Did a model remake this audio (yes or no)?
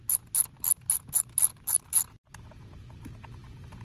no